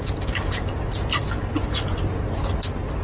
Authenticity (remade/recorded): recorded